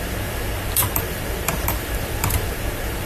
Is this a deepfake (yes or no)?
yes